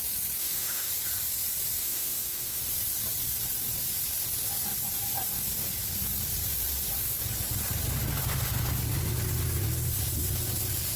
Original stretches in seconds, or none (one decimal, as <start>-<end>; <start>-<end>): 0.0-0.4; 0.9-1.8; 2.6-11.0